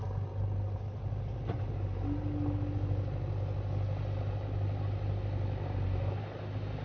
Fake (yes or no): no